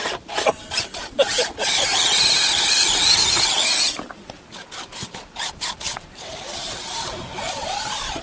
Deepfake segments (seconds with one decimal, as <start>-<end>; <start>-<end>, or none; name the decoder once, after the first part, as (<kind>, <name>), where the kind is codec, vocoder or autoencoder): 0.0-1.9 (vocoder, BigVGAN v2); 5.5-8.2